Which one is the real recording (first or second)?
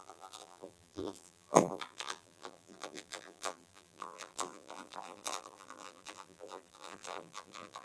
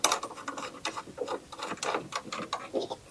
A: second